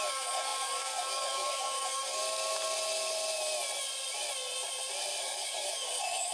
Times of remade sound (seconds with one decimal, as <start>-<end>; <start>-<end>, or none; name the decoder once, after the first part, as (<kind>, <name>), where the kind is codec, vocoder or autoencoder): 0.0-2.2 (codec, DAC); 5.2-6.3